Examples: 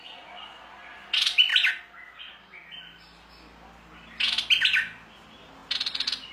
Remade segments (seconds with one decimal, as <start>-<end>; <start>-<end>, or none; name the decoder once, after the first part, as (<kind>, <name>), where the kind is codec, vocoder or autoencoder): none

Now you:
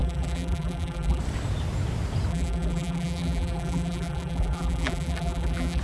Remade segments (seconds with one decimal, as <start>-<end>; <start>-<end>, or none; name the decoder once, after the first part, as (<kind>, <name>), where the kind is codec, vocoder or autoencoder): 0.0-1.2 (vocoder, BigVGAN v2); 2.3-5.8

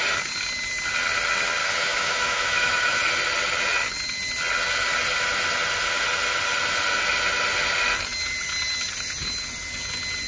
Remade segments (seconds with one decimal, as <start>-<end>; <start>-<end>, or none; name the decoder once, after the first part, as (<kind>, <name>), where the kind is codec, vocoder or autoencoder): 1.6-3.0 (autoencoder, DAC-VAE)

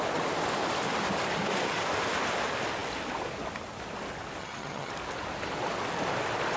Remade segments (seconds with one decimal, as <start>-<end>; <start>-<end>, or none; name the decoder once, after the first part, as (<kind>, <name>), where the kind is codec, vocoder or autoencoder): 4.4-4.9 (vocoder, HiFi-GAN)